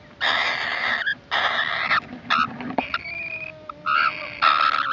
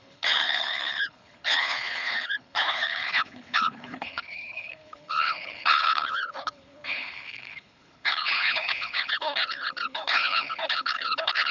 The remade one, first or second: second